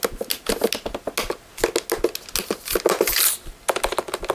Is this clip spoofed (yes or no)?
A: no